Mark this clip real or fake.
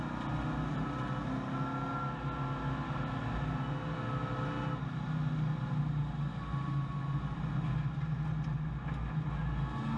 real